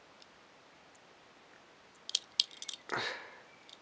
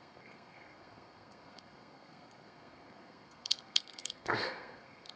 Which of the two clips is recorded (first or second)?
first